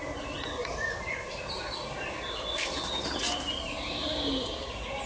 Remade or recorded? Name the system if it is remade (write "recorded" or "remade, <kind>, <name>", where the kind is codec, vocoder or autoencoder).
recorded